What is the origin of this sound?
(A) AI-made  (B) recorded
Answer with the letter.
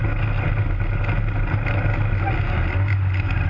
B